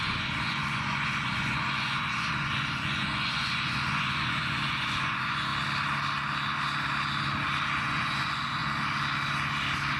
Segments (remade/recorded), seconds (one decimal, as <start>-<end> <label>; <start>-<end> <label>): 0.0-5.5 remade; 5.5-7.8 recorded; 7.8-8.6 remade; 8.6-10.0 recorded